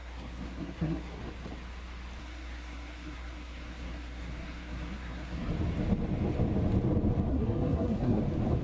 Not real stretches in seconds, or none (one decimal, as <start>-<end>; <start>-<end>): 0.0-1.2; 2.2-5.5; 7.3-8.2